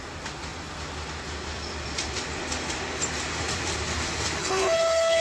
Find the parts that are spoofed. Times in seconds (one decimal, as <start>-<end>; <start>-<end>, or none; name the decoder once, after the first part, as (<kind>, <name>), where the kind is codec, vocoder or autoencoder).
4.4-5.2 (codec, HILCodec)